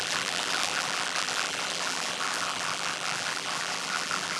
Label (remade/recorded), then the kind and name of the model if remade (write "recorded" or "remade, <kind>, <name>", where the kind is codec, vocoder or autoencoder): remade, vocoder, BigVGAN v2